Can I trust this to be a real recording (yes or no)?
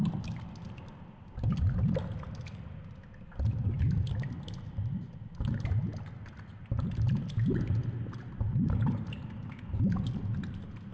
yes